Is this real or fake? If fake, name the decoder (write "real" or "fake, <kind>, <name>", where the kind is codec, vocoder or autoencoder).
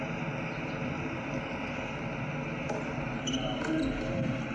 real